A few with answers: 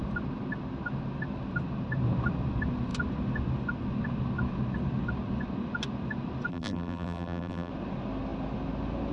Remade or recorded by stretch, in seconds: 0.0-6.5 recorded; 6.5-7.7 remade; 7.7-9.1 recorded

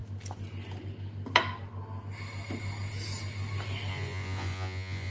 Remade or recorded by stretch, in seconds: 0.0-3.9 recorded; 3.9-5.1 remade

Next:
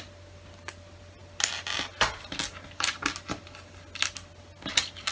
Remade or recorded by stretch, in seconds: 0.0-5.1 recorded

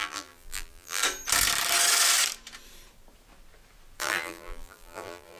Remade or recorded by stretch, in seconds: 0.0-1.0 remade; 1.0-4.0 recorded; 4.0-5.4 remade

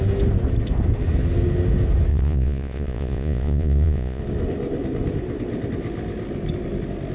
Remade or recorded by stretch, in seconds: 0.0-2.1 recorded; 2.1-4.2 remade; 4.2-7.1 recorded

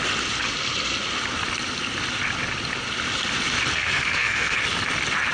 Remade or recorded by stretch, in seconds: 0.0-3.7 recorded; 3.7-4.6 remade; 4.6-5.3 recorded